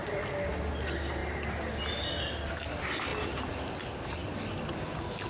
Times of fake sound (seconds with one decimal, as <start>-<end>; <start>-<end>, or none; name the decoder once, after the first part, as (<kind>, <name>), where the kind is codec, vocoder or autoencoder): none